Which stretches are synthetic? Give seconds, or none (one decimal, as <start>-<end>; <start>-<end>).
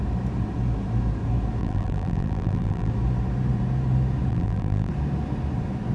1.6-2.9; 4.3-4.9